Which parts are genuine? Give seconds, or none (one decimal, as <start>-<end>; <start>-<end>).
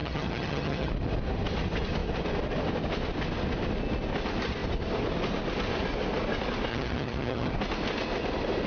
0.9-6.7; 7.5-8.7